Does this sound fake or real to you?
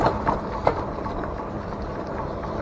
fake